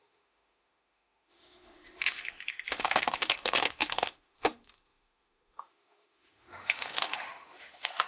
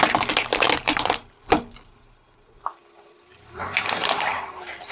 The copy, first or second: first